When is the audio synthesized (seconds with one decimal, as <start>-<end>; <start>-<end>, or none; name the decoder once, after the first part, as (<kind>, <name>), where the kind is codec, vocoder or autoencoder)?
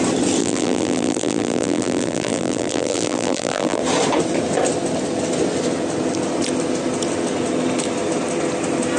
0.4-3.8 (vocoder, BigVGAN v2)